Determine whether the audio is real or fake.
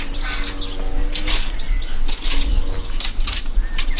real